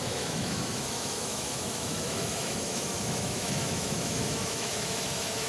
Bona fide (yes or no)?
no